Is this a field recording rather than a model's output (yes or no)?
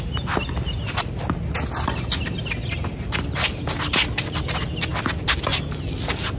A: yes